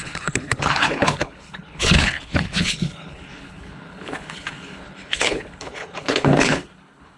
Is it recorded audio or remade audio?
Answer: remade